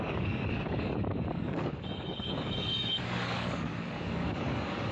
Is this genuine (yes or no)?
no